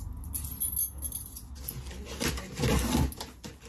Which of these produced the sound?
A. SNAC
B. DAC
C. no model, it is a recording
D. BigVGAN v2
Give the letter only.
C